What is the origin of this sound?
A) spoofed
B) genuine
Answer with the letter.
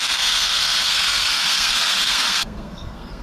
A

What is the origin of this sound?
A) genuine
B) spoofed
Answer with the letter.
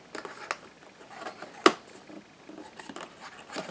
A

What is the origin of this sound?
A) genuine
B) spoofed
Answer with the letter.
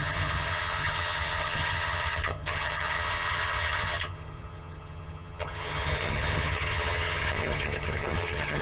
B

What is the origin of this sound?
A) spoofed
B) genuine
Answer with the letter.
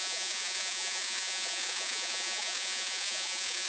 A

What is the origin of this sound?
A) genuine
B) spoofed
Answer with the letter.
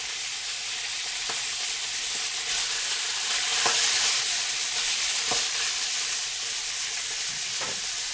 A